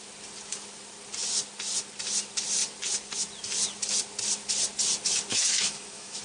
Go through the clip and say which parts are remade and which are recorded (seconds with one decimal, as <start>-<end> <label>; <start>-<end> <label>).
0.0-5.3 recorded; 5.3-6.2 remade